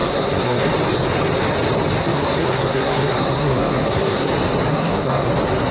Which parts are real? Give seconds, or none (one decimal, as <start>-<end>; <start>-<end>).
0.7-2.0; 4.3-4.7; 5.3-5.7